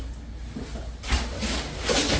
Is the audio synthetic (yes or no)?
no